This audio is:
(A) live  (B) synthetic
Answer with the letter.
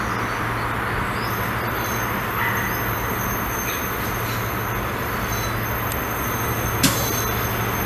A